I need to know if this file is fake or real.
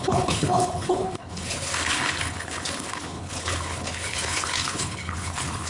fake